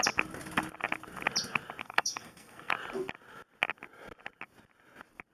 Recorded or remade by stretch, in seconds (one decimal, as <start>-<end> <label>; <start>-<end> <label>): 0.0-1.8 recorded; 1.8-2.7 remade; 2.7-5.3 recorded